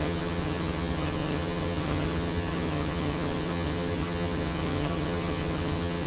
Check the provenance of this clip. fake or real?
fake